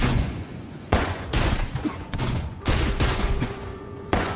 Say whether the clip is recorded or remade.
remade